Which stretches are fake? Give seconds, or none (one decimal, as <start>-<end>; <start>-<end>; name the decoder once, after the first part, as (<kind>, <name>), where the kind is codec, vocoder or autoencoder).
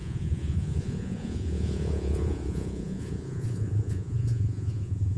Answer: 0.0-5.2 (vocoder, Vocos)